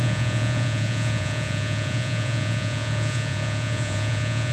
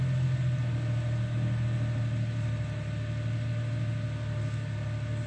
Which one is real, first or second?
second